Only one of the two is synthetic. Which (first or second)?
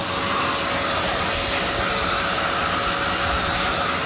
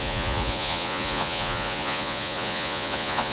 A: second